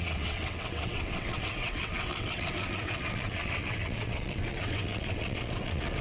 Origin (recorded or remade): remade